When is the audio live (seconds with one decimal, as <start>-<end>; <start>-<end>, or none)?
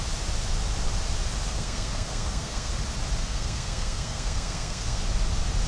0.0-1.5; 2.7-3.2; 5.0-5.7